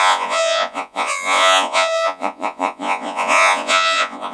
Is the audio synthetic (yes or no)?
yes